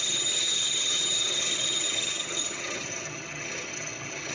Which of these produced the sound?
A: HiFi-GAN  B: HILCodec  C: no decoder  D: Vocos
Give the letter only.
A